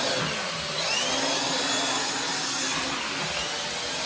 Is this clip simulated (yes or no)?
no